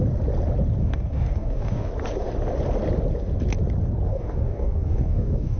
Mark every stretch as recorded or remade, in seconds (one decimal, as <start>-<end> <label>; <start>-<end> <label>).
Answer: 0.0-0.8 recorded; 0.8-1.9 remade; 1.9-4.1 recorded; 4.1-5.6 remade